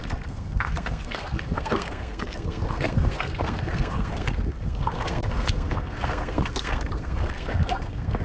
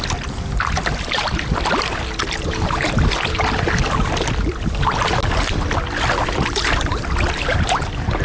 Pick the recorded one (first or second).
second